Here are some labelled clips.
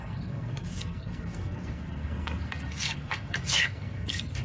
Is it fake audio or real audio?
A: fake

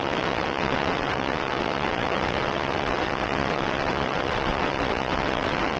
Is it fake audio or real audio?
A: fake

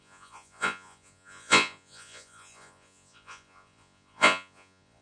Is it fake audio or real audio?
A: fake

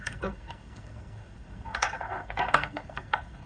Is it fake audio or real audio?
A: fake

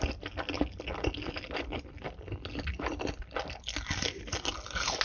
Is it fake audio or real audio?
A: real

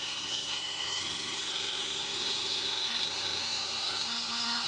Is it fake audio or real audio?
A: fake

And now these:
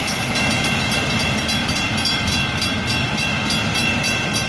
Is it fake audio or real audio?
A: real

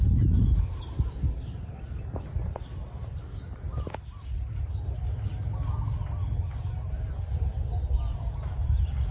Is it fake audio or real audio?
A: real